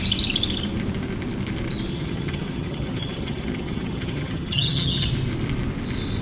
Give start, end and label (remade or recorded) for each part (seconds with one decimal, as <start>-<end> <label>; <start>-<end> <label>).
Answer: 0.0-1.9 recorded; 1.9-5.1 remade; 5.1-6.2 recorded